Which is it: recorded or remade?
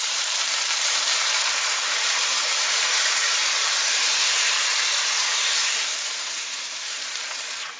remade